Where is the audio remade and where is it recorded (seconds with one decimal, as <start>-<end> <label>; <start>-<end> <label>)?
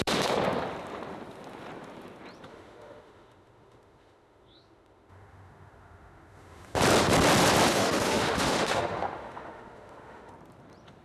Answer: 0.0-2.5 recorded; 2.5-6.8 remade; 6.8-7.7 recorded; 7.7-10.3 remade; 10.3-11.0 recorded